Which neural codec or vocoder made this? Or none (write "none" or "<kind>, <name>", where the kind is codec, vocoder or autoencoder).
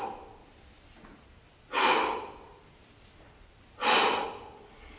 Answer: none